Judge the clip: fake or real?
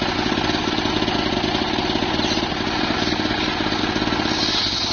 real